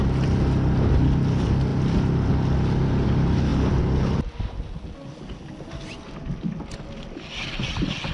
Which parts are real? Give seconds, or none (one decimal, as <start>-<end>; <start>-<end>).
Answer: 0.0-8.1